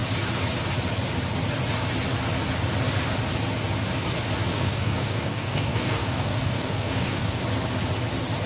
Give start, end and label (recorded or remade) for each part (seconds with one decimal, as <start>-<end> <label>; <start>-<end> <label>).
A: 0.0-4.5 recorded; 4.5-7.4 remade; 7.4-8.5 recorded